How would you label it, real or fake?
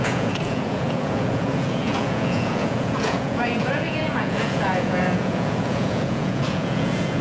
fake